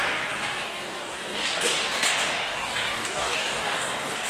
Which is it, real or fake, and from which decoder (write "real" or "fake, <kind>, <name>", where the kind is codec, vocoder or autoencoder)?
fake, codec, DAC